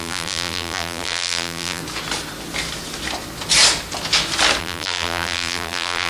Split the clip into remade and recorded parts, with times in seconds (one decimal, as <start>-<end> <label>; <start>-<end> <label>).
0.0-1.8 remade; 1.8-4.6 recorded; 4.6-6.1 remade